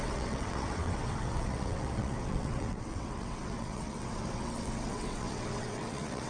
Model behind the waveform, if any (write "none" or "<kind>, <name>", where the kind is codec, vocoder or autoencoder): vocoder, WaveNeXt